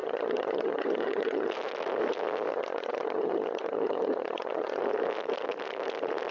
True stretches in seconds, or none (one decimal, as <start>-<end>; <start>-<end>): 1.5-2.5; 4.8-6.3